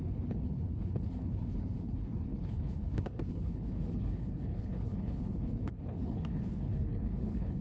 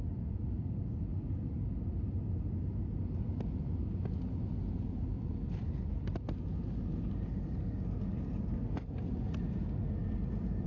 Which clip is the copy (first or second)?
first